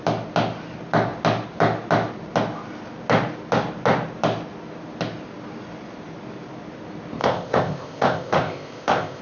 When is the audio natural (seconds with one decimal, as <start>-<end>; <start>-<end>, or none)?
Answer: 0.0-7.2